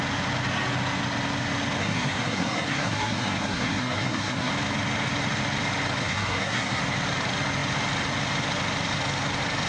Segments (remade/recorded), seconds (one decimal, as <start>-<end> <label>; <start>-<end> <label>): 0.0-1.8 recorded; 1.8-4.5 remade; 4.5-6.0 recorded; 6.0-6.8 remade; 6.8-9.7 recorded